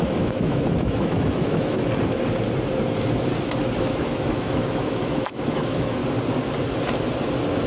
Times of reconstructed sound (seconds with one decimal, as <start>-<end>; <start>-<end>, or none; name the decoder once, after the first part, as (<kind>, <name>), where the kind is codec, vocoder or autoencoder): 0.0-1.8 (autoencoder, DAC-VAE); 3.8-6.0